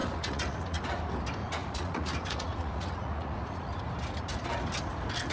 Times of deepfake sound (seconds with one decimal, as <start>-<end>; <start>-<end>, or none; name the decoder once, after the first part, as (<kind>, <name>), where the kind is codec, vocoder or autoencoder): 0.0-1.0 (vocoder, Vocos); 1.4-3.8